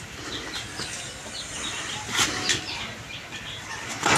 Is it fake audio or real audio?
real